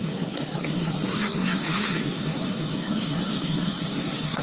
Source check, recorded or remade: remade